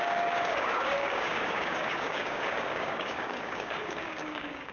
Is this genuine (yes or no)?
no